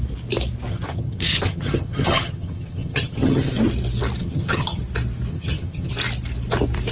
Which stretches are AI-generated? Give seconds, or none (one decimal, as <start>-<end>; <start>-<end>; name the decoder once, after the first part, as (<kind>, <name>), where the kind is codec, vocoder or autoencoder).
0.7-3.5 (vocoder, HiFi-GAN); 4.2-4.8; 5.3-5.9